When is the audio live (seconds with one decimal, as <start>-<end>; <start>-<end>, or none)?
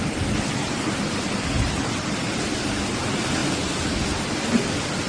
0.0-5.1